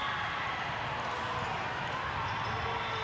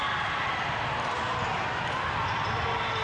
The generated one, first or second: second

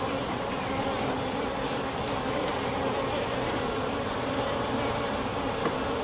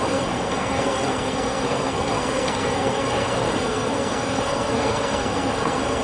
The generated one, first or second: second